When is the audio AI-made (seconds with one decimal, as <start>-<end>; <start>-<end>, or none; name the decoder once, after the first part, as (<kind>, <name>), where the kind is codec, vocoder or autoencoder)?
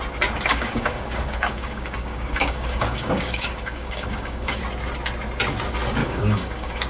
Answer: 0.5-4.6 (codec, DAC); 6.0-6.9